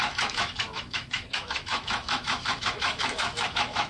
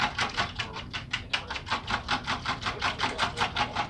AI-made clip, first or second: first